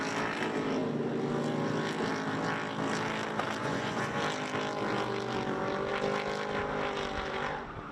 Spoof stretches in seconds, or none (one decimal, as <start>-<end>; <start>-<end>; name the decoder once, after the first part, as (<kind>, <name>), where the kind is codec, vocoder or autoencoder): 3.6-4.2 (vocoder, Vocos)